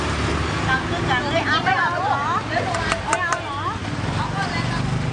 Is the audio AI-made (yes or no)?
no